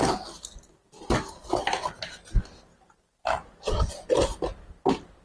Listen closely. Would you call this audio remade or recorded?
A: recorded